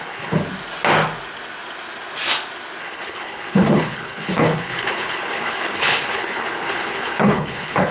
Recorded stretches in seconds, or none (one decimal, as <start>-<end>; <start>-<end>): 0.4-2.8